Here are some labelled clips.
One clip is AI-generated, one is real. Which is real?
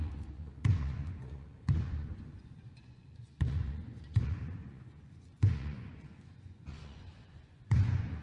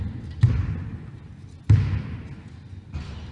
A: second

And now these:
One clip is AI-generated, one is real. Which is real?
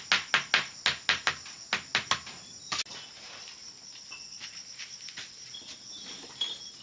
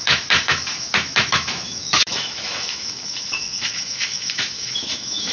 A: first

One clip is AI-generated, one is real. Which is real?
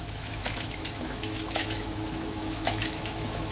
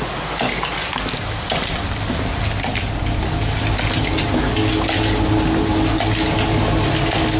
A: second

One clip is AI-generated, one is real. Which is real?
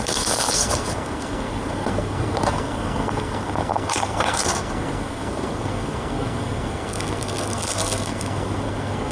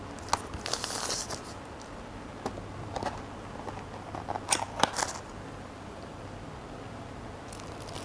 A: second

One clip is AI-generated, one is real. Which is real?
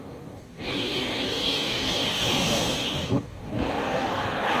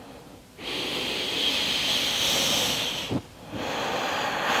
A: second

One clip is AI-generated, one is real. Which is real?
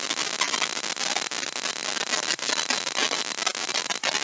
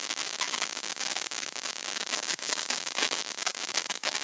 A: first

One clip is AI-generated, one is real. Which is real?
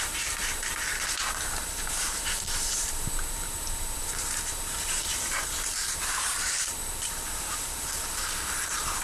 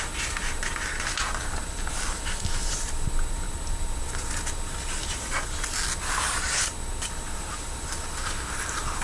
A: second